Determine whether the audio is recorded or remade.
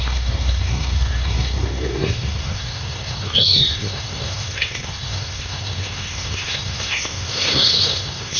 remade